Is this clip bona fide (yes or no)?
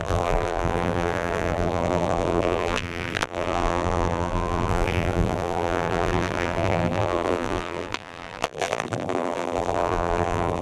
no